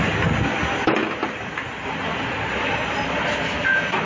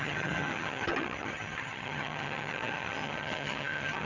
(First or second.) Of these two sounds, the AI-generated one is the second